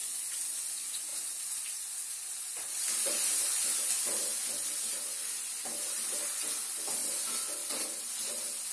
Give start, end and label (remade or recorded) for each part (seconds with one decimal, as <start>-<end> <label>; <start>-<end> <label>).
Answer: 0.0-8.7 recorded